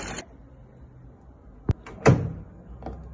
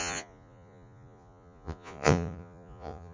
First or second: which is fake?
second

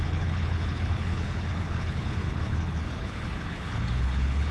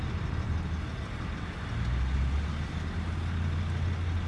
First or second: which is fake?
first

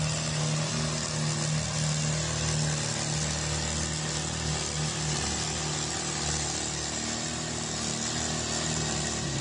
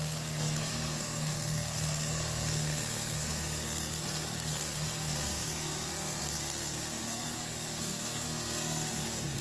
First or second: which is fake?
second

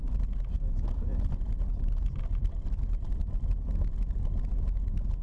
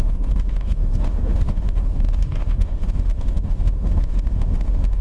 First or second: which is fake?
second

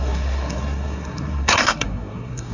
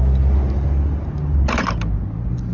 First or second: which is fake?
first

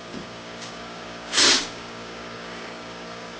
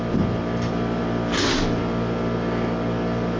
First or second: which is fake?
first